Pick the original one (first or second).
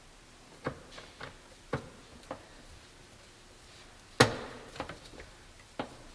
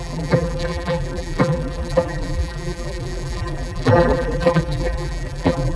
first